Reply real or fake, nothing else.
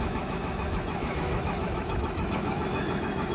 fake